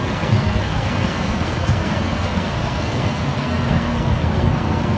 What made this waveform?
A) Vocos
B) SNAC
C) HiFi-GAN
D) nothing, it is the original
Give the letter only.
B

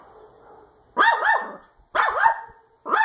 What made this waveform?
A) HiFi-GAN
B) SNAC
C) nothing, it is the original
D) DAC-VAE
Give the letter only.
C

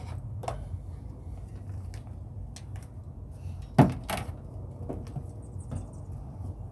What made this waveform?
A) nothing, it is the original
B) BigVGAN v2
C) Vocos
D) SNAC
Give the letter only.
A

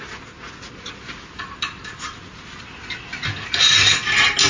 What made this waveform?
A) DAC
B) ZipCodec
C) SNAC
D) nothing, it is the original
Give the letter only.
D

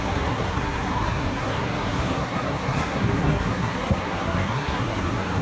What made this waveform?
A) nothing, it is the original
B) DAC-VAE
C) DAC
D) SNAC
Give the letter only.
D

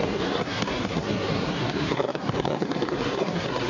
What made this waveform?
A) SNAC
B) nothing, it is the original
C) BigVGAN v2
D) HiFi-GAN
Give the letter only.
A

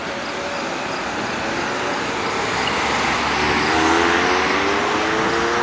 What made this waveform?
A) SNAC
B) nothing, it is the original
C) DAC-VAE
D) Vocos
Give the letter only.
B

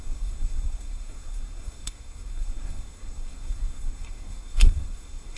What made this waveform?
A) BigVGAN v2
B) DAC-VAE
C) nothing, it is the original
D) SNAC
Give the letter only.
D